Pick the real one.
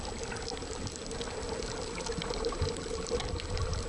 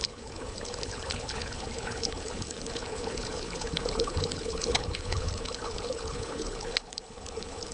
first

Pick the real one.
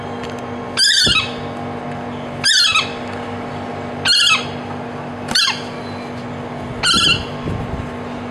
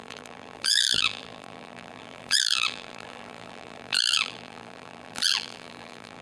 first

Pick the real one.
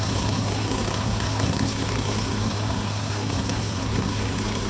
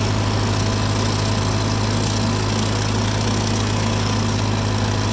second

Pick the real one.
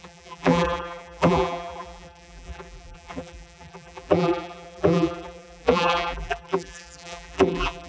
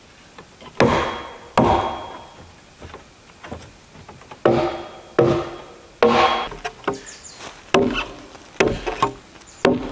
second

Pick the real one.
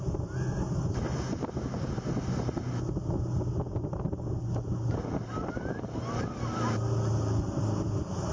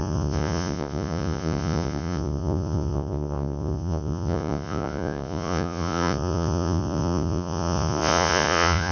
first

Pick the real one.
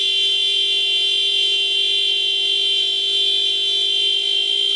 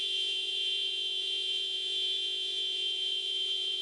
first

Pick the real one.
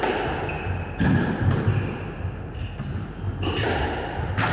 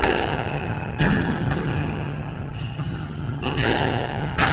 first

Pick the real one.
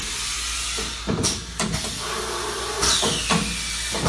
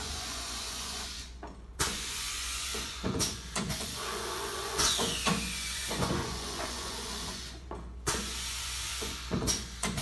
first